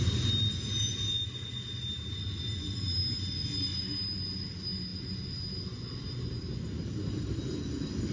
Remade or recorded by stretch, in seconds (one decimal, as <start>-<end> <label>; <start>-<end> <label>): 0.0-8.1 recorded